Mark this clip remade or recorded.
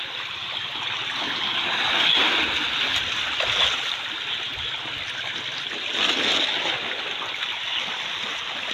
recorded